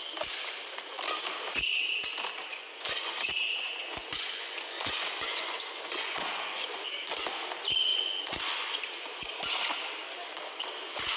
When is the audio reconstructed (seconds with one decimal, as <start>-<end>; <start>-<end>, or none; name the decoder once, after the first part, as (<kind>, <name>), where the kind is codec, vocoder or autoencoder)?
2.5-6.9 (vocoder, Vocos); 7.9-8.8